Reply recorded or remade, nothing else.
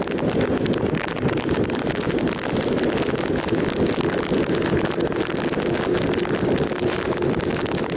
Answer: recorded